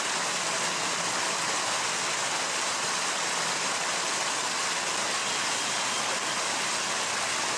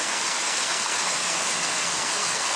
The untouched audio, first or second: first